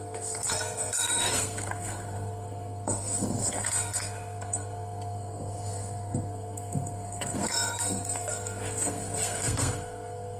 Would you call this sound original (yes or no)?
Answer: no